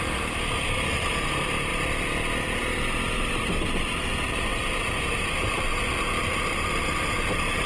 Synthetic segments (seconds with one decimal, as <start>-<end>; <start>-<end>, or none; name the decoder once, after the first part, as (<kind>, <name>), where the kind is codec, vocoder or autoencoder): none